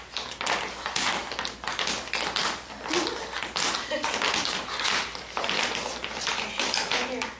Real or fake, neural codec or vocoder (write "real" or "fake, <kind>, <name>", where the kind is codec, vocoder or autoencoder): real